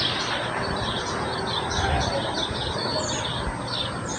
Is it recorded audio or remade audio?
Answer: recorded